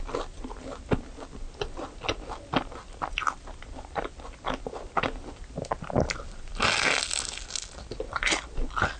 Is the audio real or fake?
real